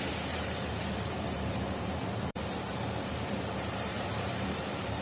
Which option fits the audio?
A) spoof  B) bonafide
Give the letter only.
A